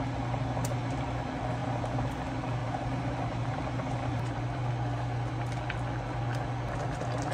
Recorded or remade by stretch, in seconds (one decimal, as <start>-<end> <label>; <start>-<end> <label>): 0.0-1.6 recorded; 1.6-2.1 remade; 2.1-2.6 recorded; 2.6-4.7 remade; 4.7-7.3 recorded